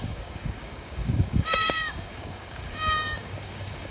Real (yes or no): no